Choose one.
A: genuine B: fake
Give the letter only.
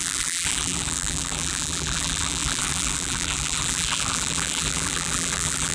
B